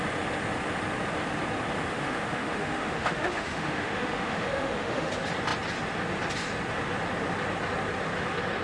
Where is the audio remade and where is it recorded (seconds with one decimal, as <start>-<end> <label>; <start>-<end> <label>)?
0.0-1.9 recorded; 1.9-5.1 remade; 5.1-8.6 recorded